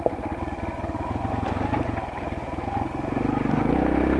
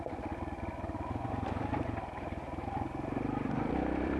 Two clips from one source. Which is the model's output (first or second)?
second